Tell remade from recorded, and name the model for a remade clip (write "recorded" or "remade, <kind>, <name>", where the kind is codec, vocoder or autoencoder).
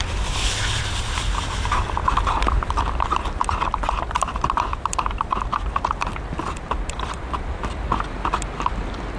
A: remade, vocoder, BigVGAN v2